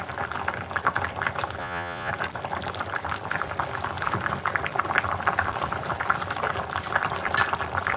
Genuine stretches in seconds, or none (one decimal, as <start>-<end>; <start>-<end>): 0.0-1.6; 2.1-8.0